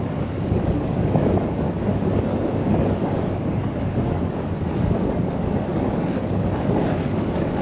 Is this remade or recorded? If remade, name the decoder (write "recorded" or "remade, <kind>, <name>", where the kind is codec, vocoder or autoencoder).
remade, codec, DAC